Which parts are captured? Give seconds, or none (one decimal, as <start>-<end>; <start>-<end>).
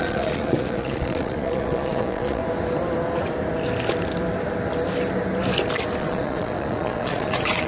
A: 2.4-6.0